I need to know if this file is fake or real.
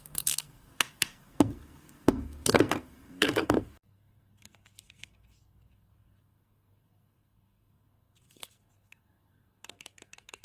fake